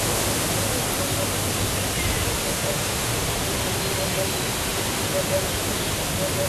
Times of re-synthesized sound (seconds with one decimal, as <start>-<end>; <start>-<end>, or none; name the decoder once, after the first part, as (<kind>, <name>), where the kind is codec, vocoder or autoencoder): 2.4-3.2 (autoencoder, DAC-VAE)